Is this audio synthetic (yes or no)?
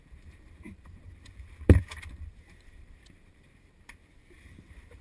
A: yes